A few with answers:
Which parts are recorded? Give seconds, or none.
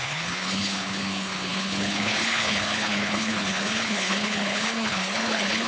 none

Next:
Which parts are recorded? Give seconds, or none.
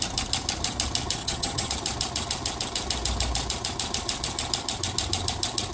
0.0-1.2; 1.7-5.7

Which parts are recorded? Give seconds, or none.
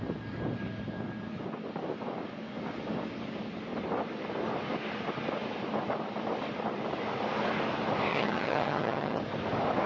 0.0-8.1; 9.2-9.9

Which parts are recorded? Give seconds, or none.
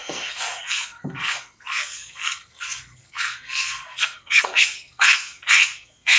none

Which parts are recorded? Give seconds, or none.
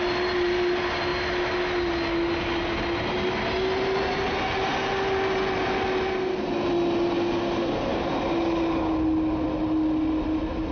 0.0-10.7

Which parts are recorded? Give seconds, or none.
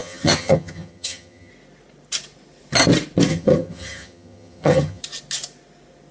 1.5-3.3; 5.0-6.1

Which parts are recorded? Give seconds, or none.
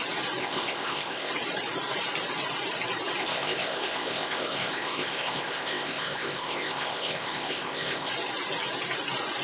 0.0-0.4; 1.3-3.2; 8.1-9.4